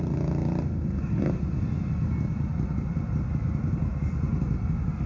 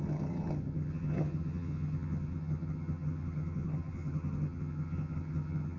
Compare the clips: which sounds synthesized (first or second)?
second